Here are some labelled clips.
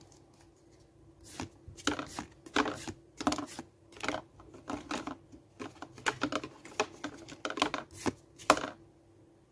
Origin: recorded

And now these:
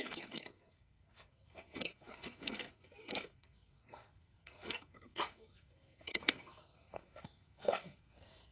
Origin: remade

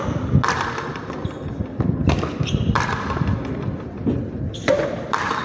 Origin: recorded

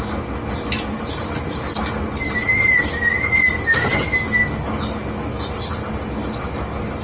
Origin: recorded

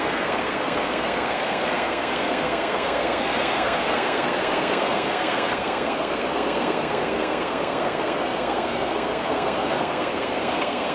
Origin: remade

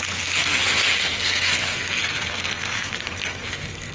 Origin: remade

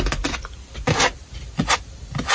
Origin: recorded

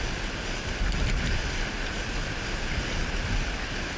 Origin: recorded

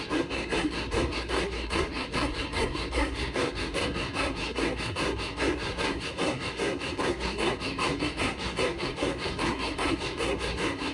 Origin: remade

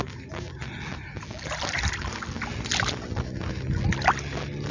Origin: recorded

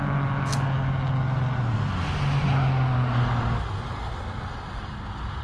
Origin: recorded